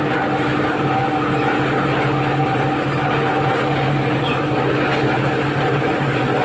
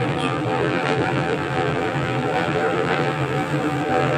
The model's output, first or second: second